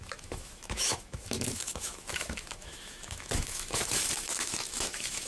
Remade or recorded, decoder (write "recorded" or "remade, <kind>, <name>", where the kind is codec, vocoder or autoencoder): remade, autoencoder, DAC-VAE